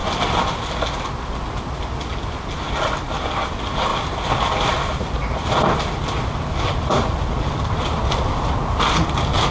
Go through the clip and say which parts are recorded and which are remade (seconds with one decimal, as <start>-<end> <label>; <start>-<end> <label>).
0.0-3.9 recorded; 3.9-8.0 remade; 8.0-9.5 recorded